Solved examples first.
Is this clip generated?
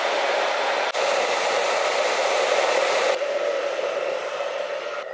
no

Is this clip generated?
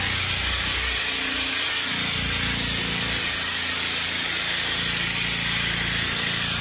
no